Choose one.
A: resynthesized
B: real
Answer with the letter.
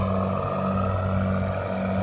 B